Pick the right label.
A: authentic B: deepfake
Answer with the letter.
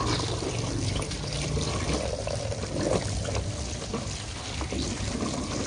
A